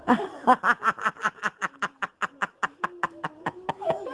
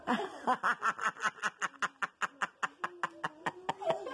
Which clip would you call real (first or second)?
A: second